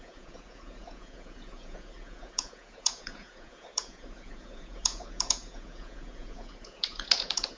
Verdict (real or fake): fake